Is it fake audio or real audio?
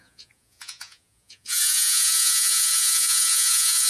fake